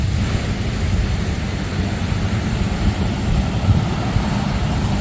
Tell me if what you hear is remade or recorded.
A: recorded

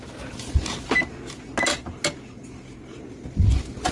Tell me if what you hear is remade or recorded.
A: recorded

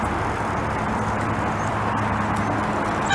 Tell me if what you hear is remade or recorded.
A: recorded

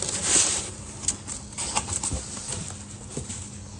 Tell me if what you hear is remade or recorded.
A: remade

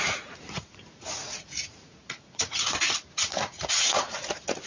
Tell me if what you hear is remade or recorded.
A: remade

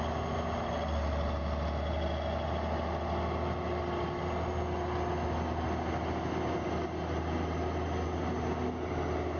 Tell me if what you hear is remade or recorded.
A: recorded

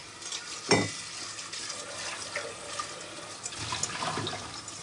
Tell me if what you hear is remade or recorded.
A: recorded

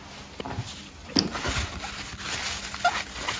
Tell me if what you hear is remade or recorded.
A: recorded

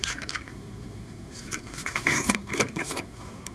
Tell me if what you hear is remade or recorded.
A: remade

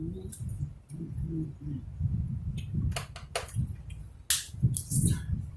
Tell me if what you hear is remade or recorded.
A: recorded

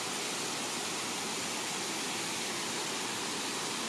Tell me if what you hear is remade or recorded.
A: recorded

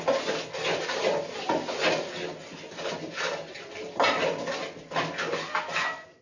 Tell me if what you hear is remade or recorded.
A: recorded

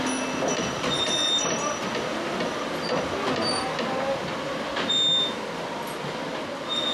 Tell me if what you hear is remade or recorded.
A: recorded